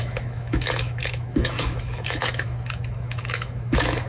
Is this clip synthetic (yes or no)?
yes